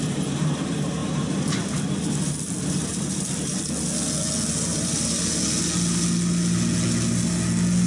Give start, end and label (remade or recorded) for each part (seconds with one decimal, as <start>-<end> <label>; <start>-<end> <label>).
0.0-1.0 recorded; 1.0-3.7 remade; 3.7-4.7 recorded; 4.7-5.4 remade; 5.4-7.9 recorded